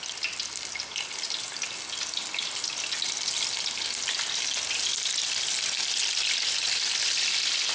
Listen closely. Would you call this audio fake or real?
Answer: real